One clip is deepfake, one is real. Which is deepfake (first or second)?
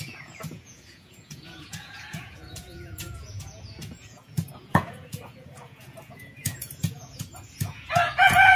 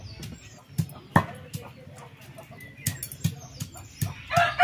first